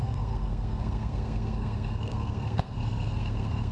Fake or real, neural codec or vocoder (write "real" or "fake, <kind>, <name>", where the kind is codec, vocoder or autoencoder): fake, codec, SNAC